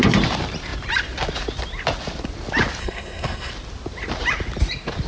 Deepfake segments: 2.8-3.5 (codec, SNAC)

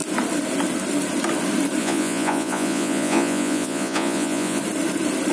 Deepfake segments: 1.8-4.6 (vocoder, Vocos)

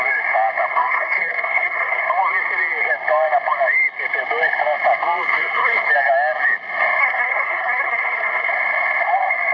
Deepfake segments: 0.7-2.0 (codec, SNAC); 5.3-5.9; 7.0-8.5

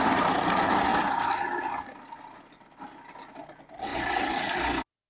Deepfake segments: none

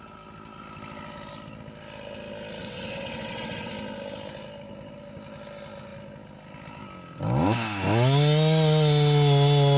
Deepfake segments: 2.6-3.7 (vocoder, WaveNeXt)

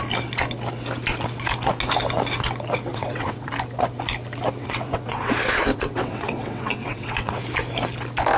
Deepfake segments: 2.9-3.5 (vocoder, WaveNeXt); 4.6-5.3; 5.7-7.4

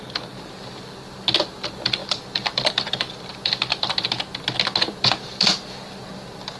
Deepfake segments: 2.0-3.9 (vocoder, BigVGAN v2)

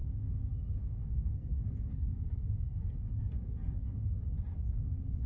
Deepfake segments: 0.0-4.0 (codec, SNAC)